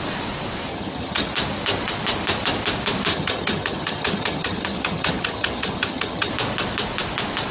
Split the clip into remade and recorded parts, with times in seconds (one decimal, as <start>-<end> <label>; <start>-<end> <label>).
0.0-0.7 recorded; 0.7-1.3 remade; 1.3-3.1 recorded; 3.1-6.3 remade; 6.3-7.5 recorded